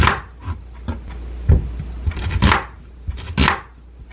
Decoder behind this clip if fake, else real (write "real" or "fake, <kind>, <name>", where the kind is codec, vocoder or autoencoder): real